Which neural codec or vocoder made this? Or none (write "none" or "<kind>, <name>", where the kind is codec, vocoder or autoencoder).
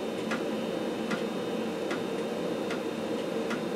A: none